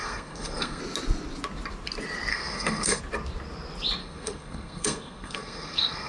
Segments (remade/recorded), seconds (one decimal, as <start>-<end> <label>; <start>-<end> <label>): 0.0-0.8 remade; 0.8-2.3 recorded; 2.3-3.0 remade; 3.0-4.0 recorded; 4.0-6.1 remade